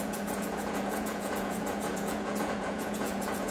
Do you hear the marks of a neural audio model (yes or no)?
yes